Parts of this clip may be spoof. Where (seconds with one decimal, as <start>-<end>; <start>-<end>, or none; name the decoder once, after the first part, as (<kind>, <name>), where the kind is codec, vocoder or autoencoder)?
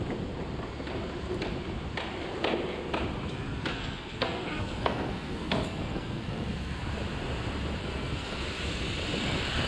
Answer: 3.6-6.9 (codec, SNAC); 7.8-8.4